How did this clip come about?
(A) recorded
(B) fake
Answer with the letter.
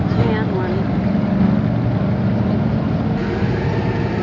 A